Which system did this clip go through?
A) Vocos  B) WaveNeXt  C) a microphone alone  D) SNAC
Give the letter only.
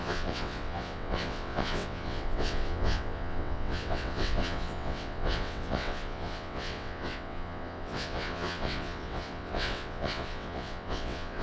B